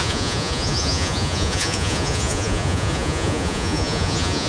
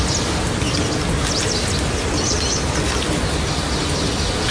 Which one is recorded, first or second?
second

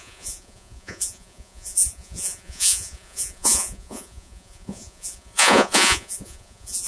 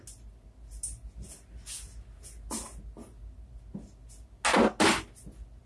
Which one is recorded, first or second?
second